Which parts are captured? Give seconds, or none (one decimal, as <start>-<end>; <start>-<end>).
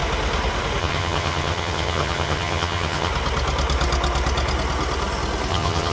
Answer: 0.0-0.8; 3.1-5.5